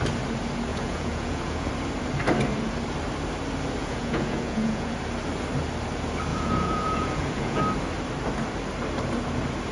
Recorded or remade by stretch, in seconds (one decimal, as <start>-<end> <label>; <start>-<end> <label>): 0.0-0.7 recorded; 0.7-1.7 remade; 1.7-3.8 recorded; 3.8-4.9 remade; 4.9-6.3 recorded; 6.3-7.6 remade; 7.6-9.7 recorded

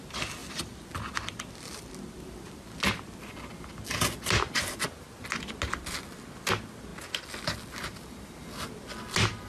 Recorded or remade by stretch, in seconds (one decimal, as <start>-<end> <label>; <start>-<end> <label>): 0.0-0.4 recorded; 0.4-1.9 remade; 1.9-9.5 recorded

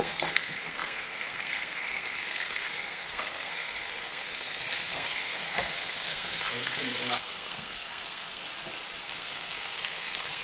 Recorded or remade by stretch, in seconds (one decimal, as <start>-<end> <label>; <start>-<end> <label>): 0.0-8.4 remade; 8.4-9.0 recorded; 9.0-10.4 remade

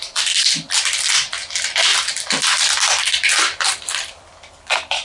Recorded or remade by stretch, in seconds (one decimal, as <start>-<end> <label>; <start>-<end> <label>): 0.0-1.9 remade; 1.9-2.5 recorded; 2.5-5.0 remade

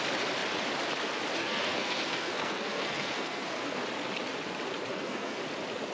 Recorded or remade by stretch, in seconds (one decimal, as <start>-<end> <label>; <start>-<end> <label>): 0.0-1.4 recorded; 1.4-3.8 remade; 3.8-4.9 recorded; 4.9-5.4 remade; 5.4-5.9 recorded